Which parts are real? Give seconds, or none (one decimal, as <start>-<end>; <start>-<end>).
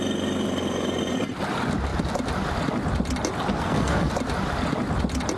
0.0-3.5; 4.1-5.4